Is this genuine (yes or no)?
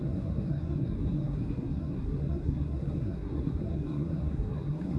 no